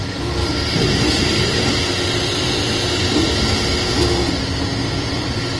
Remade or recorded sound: recorded